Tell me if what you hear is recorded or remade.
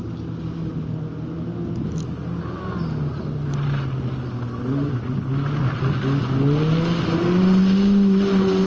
recorded